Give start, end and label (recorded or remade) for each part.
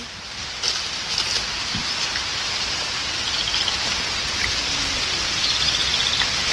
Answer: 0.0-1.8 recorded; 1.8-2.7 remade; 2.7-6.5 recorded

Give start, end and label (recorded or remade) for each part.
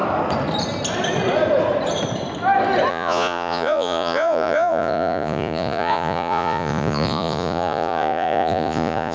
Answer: 0.0-2.9 recorded; 2.9-9.1 remade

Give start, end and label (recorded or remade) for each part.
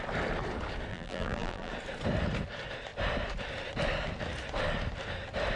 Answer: 0.0-0.9 recorded; 0.9-1.7 remade; 1.7-5.6 recorded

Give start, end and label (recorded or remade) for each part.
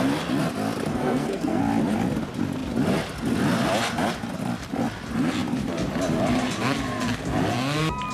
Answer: 0.0-0.9 recorded; 0.9-1.6 remade; 1.6-8.1 recorded